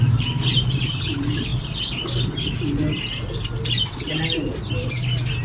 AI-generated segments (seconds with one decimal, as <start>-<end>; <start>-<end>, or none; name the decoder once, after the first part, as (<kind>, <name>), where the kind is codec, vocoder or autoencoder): 0.0-1.5 (vocoder, BigVGAN v2); 4.7-5.4

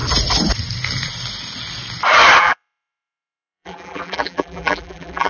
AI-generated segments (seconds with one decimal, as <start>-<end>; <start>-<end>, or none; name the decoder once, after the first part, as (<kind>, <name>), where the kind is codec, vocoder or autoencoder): 2.4-5.3 (vocoder, BigVGAN v2)